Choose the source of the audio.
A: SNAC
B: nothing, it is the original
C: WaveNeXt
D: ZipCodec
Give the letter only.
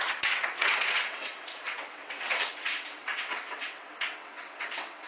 C